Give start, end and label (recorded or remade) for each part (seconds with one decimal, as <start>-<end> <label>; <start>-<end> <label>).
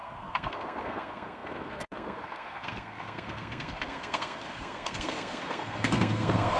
0.0-6.6 remade